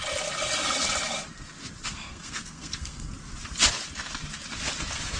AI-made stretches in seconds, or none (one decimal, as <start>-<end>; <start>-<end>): 1.8-3.1